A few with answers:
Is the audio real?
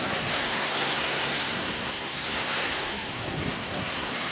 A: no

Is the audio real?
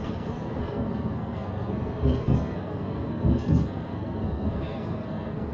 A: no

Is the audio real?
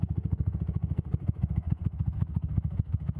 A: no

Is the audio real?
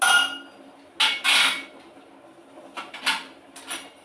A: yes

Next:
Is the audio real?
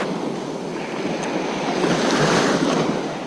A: yes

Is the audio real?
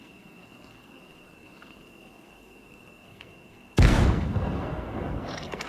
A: no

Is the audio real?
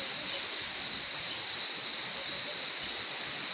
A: yes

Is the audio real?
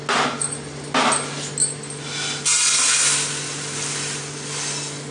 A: yes